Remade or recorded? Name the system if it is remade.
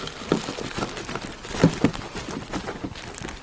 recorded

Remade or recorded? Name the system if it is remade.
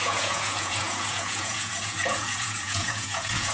remade, vocoder, Vocos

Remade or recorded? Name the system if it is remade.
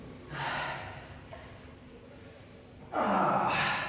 recorded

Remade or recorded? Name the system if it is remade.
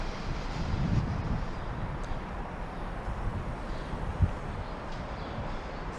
remade, vocoder, BigVGAN v2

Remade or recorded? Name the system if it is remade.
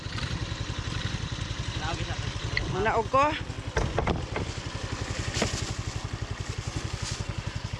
recorded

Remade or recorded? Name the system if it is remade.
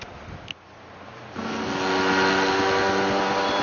recorded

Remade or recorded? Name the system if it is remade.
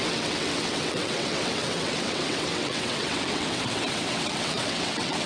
remade, vocoder, WaveNeXt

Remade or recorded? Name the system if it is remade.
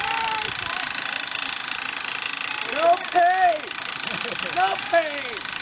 recorded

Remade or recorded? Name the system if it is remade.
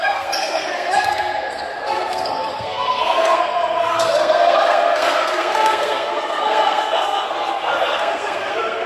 remade, codec, SNAC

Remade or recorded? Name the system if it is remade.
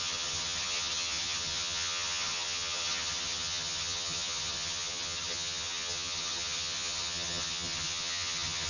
remade, vocoder, HiFi-GAN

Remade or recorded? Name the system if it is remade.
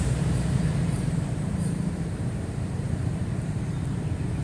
remade, vocoder, BigVGAN v2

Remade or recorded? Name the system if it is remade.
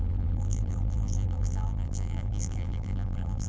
remade, vocoder, BigVGAN v2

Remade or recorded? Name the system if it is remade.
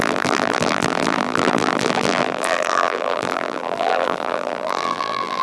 remade, vocoder, BigVGAN v2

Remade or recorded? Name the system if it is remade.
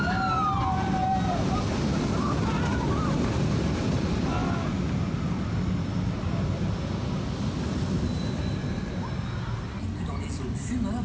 recorded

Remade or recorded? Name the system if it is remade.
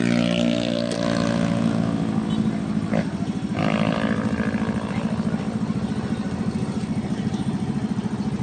recorded